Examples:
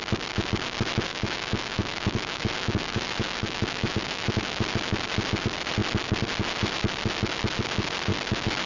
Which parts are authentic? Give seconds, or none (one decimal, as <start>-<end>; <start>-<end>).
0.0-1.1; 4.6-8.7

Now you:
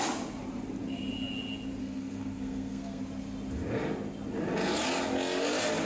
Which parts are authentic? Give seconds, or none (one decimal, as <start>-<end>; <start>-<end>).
0.0-1.8; 3.0-5.9

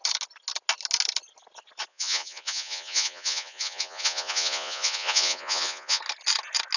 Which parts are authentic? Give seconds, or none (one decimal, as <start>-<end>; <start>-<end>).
0.0-1.9; 6.0-6.8

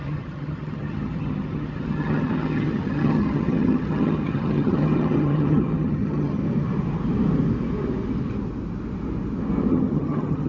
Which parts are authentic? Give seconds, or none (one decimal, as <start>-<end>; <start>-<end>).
6.4-9.7